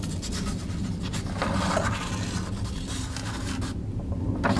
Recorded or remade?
recorded